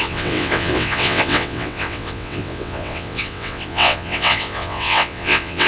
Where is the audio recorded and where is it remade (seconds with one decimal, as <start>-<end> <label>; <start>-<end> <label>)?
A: 0.0-5.7 remade